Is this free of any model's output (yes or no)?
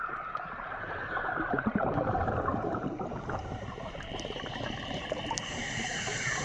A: no